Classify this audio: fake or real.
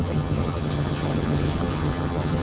fake